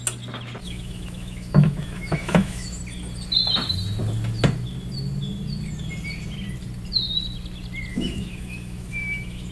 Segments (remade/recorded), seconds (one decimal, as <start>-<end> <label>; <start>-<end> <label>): 0.0-0.6 recorded; 0.6-2.8 remade; 2.8-7.9 recorded; 7.9-9.5 remade